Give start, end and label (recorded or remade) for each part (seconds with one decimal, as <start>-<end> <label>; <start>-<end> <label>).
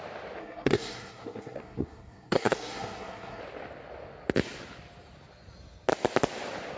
0.0-0.4 recorded; 0.4-3.4 remade; 3.4-6.8 recorded